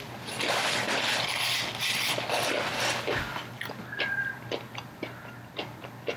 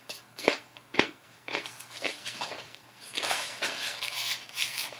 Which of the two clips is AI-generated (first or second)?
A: second